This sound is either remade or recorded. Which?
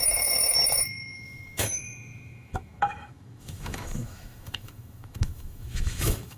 remade